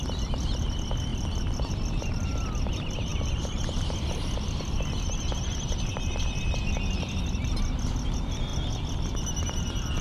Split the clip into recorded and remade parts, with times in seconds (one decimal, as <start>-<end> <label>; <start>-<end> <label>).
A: 0.0-10.0 remade